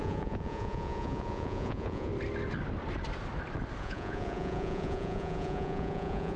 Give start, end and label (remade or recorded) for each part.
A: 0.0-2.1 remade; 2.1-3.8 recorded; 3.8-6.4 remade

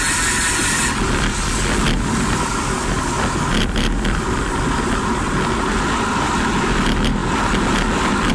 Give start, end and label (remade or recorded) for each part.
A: 0.0-8.3 recorded